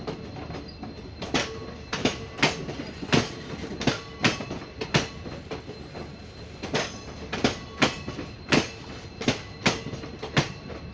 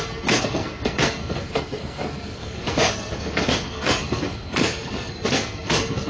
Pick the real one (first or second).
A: first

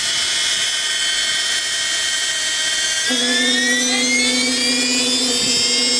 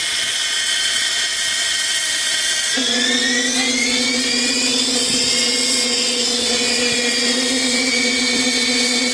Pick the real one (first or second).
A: first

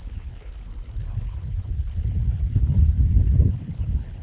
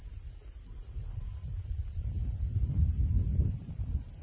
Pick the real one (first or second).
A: second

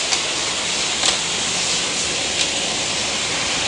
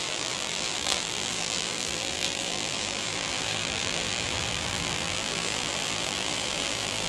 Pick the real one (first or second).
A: first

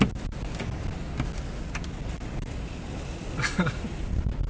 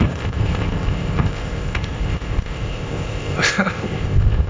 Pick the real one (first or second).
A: first